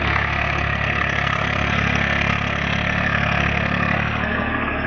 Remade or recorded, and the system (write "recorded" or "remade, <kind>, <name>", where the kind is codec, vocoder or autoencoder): remade, codec, SNAC